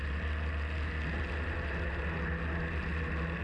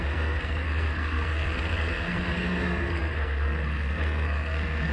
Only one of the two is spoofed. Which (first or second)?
second